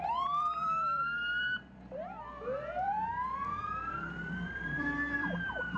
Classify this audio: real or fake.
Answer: fake